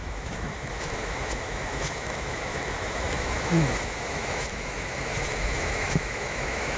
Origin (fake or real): fake